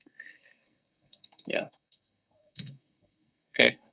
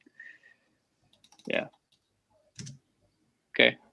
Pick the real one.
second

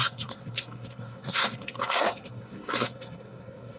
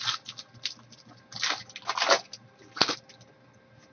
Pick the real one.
second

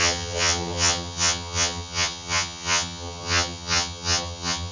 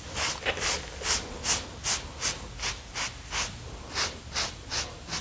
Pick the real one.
second